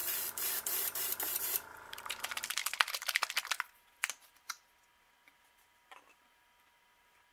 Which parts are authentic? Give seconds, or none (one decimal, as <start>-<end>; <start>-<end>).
2.6-6.1